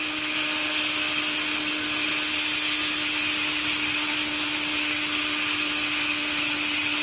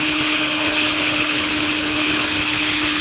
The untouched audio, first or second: first